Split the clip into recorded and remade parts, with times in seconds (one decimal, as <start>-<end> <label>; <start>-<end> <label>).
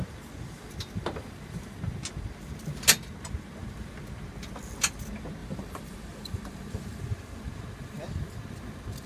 0.0-5.4 recorded; 5.4-7.0 remade; 7.0-9.1 recorded